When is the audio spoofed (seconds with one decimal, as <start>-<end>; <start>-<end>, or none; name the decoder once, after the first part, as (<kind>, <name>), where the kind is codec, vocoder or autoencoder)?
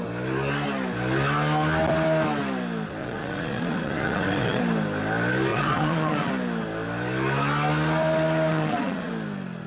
3.0-4.6 (vocoder, Vocos); 5.5-6.3; 8.5-9.1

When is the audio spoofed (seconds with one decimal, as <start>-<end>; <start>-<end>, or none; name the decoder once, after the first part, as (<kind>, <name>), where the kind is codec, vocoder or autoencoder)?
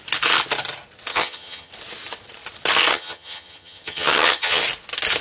1.1-1.7 (vocoder, HiFi-GAN); 2.9-4.6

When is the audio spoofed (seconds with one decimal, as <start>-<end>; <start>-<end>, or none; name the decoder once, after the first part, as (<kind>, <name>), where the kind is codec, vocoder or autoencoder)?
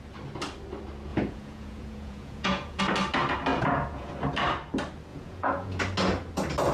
1.1-2.8 (vocoder, Vocos); 3.5-4.1; 5.1-5.8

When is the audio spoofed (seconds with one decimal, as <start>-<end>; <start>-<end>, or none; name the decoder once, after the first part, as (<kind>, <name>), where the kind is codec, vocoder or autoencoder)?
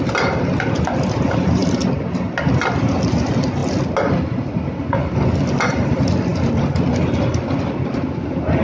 none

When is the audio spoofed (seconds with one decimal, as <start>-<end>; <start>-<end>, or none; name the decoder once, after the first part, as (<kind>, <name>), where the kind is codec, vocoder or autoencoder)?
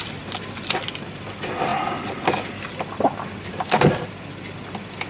none